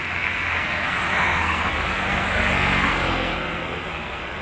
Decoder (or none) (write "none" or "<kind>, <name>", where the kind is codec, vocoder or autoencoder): codec, SNAC